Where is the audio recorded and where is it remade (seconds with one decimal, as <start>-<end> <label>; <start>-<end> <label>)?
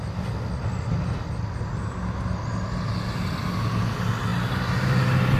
0.0-4.3 recorded; 4.3-5.4 remade